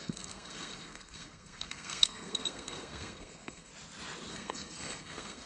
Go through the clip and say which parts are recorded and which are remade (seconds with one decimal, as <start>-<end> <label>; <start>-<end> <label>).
0.0-3.7 remade; 3.7-4.3 recorded; 4.3-5.5 remade